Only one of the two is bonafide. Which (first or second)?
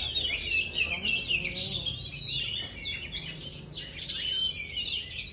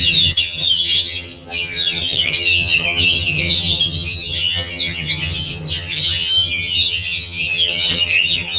first